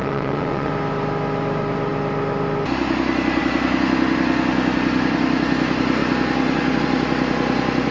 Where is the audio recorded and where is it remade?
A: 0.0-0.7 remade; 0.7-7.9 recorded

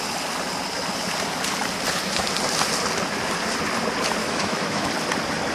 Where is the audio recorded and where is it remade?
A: 0.0-4.2 recorded; 4.2-4.9 remade; 4.9-5.5 recorded

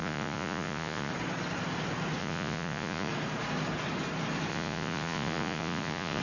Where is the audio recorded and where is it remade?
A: 0.0-1.1 remade; 1.1-2.2 recorded; 2.2-3.1 remade; 3.1-4.5 recorded; 4.5-6.2 remade

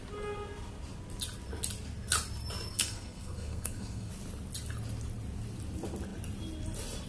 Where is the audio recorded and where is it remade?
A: 0.0-2.7 recorded; 2.7-4.1 remade; 4.1-7.1 recorded